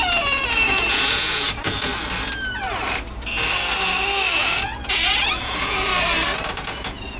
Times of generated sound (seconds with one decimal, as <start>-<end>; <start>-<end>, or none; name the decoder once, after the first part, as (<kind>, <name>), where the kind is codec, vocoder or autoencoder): 0.0-1.9 (vocoder, Vocos); 4.3-5.9; 6.5-7.2